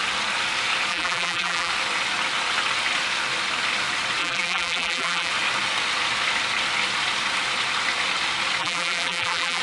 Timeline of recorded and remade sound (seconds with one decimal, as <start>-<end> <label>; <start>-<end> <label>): 0.0-0.9 recorded; 0.9-1.7 remade; 1.7-4.2 recorded; 4.2-5.3 remade; 5.3-8.6 recorded; 8.6-9.6 remade